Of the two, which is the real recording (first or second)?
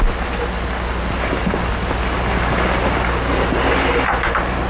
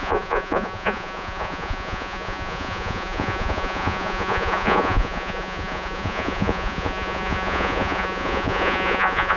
first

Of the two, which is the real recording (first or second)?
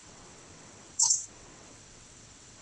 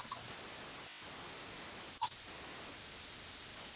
second